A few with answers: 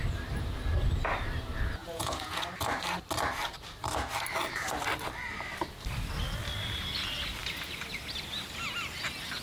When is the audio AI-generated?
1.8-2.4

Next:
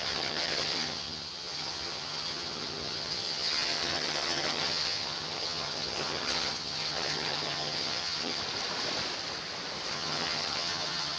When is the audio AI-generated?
0.0-8.4; 9.9-11.2

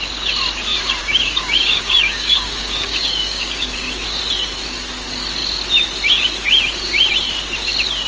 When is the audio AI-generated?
1.0-4.2

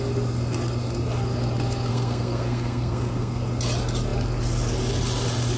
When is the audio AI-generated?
1.9-3.4

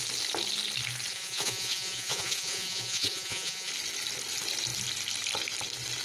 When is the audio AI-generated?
1.1-3.7

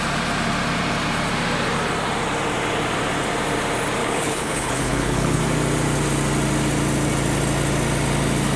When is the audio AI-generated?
4.0-5.4